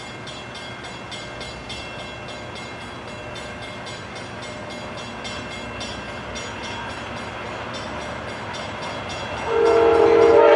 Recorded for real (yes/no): yes